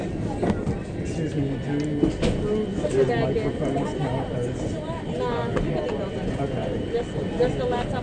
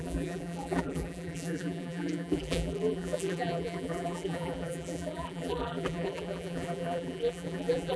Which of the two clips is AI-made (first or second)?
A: second